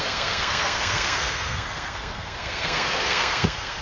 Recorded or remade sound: remade